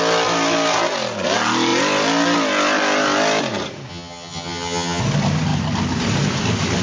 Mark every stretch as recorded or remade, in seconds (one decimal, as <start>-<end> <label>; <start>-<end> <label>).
0.0-3.9 recorded; 3.9-5.0 remade; 5.0-6.8 recorded